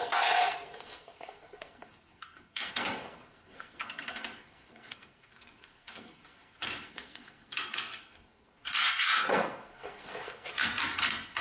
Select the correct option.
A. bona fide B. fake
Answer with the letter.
B